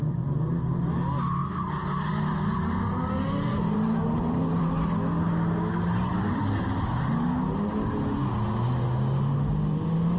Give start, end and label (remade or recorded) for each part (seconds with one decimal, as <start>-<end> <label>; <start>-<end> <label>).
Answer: 0.0-3.5 recorded; 3.5-4.6 remade; 4.6-10.2 recorded